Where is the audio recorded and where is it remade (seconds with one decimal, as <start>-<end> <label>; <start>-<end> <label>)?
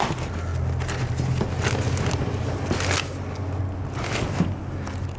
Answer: 0.0-5.2 recorded